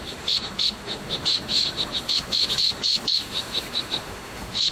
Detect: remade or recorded remade